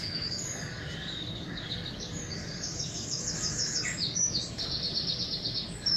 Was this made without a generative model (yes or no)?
no